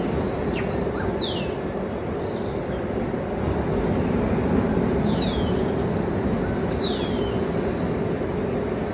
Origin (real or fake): real